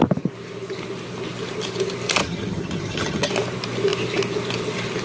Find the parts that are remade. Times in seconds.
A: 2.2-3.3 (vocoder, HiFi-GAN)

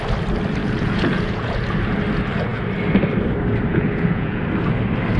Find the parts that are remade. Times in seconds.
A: 0.6-1.6 (vocoder, Vocos); 3.7-4.4

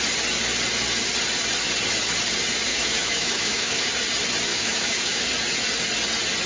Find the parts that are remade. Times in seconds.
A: 2.7-3.9 (autoencoder, DAC-VAE); 4.5-5.2

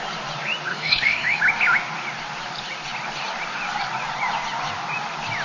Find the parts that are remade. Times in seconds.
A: 0.7-1.4 (autoencoder, DAC-VAE)

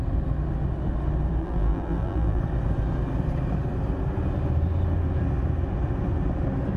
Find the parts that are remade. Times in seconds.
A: 1.4-2.4 (vocoder, BigVGAN v2)

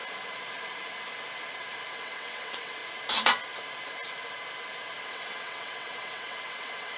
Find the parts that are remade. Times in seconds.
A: 1.9-2.8 (vocoder, WaveNeXt); 5.0-7.0

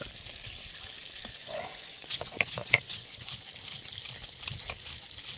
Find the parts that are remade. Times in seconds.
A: 1.4-3.3 (vocoder, Vocos)

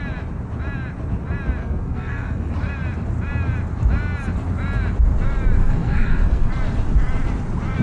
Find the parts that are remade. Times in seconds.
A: 1.6-2.5 (codec, SNAC); 5.6-6.5